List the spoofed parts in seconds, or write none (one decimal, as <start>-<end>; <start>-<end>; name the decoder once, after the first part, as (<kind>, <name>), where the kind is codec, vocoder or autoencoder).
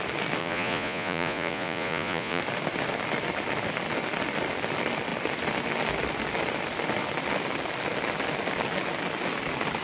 0.4-2.4 (vocoder, Vocos)